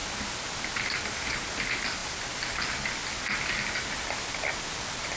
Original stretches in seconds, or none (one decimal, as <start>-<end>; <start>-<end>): 0.0-5.2